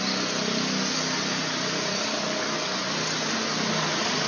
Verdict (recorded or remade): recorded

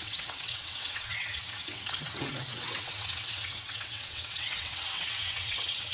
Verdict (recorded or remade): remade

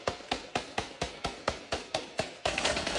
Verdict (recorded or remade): remade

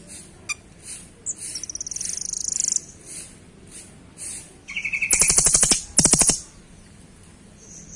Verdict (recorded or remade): recorded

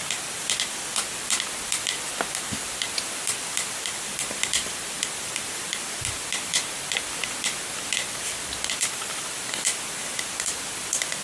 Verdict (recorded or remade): remade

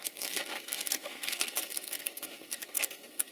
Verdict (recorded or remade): remade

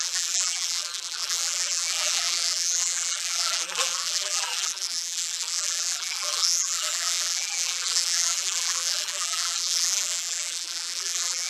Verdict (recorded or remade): remade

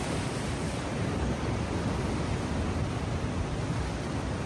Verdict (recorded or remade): recorded